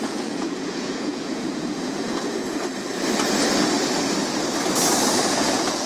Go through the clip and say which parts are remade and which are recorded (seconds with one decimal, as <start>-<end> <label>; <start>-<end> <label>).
0.0-2.4 remade; 2.4-5.3 recorded; 5.3-5.9 remade